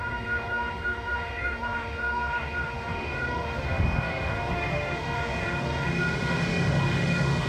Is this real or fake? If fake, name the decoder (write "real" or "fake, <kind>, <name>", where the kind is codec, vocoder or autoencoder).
fake, autoencoder, DAC-VAE